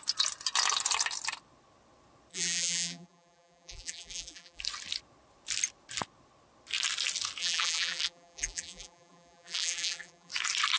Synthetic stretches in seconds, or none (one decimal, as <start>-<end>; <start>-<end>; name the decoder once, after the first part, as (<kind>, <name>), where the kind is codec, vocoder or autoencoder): 2.3-4.6 (vocoder, BigVGAN v2); 7.4-10.3